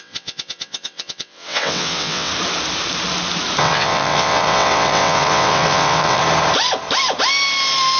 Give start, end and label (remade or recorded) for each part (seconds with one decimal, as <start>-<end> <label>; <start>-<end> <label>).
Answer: 0.0-2.3 remade; 2.3-3.6 recorded; 3.6-6.2 remade; 6.2-8.0 recorded